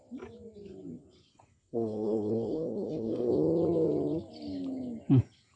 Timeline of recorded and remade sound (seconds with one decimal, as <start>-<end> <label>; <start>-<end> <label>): 0.0-1.3 recorded; 1.3-3.3 remade; 3.3-5.6 recorded